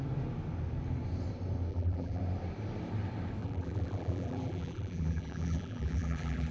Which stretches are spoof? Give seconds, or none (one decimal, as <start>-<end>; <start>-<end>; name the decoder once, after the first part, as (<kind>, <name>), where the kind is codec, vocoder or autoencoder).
1.7-2.2 (vocoder, BigVGAN v2); 3.4-6.5